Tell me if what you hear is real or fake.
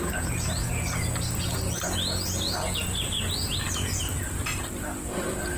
real